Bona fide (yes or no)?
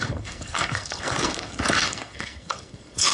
no